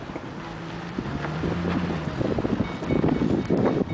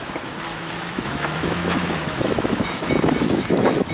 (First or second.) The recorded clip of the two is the first